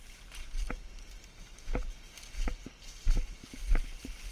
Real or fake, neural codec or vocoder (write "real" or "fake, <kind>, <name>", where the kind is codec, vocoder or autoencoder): real